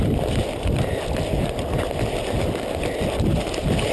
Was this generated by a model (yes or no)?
no